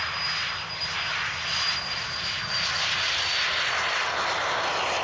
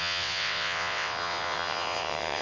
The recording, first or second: first